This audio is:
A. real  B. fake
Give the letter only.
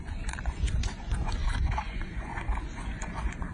B